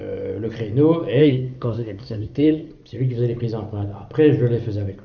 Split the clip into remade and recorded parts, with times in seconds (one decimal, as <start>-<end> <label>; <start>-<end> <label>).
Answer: 0.0-1.2 recorded; 1.2-2.7 remade; 2.7-5.0 recorded